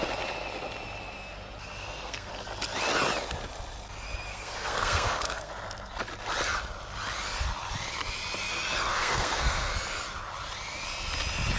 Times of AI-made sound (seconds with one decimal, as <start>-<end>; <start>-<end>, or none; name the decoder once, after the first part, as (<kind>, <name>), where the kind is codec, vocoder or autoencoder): 1.8-2.3 (codec, SNAC); 4.3-5.5; 8.9-9.7